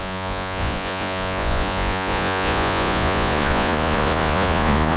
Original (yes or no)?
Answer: no